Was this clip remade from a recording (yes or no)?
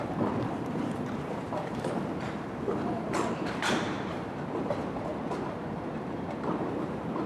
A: yes